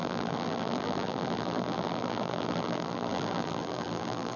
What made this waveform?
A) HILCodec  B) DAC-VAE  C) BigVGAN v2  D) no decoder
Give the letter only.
C